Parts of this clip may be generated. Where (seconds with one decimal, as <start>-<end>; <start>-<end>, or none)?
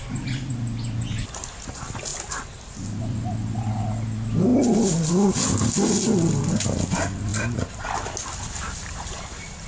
none